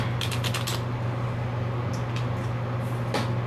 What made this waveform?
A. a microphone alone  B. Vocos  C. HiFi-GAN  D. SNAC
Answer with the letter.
A